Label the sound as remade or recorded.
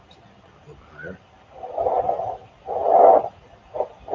recorded